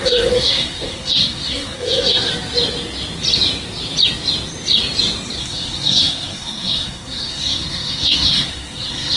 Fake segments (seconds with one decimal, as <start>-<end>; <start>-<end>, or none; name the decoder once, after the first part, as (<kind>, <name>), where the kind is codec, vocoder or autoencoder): 0.0-2.3 (codec, SNAC); 5.4-9.2